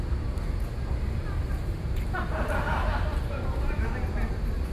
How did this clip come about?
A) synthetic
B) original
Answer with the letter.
B